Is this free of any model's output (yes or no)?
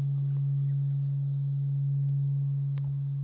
yes